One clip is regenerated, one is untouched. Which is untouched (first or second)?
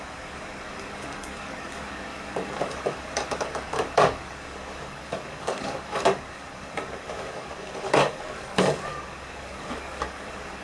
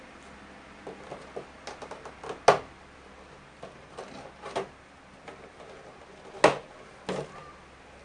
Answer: second